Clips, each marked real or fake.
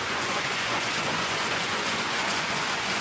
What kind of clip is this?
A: fake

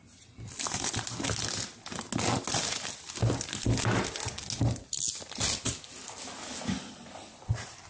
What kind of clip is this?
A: real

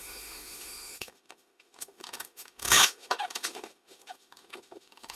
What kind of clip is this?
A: fake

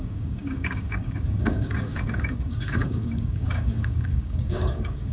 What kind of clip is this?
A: fake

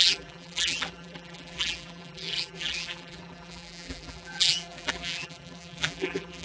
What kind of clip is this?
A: fake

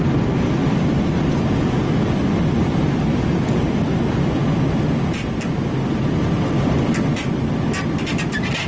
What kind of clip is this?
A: real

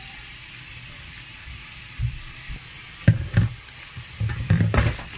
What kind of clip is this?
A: fake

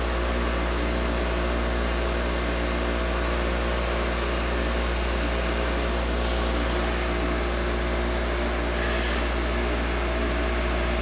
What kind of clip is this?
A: real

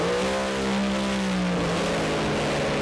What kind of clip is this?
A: real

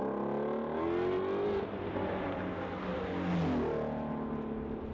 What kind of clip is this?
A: real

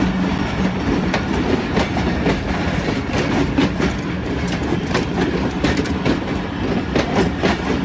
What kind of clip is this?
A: real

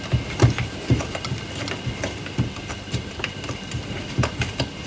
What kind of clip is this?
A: real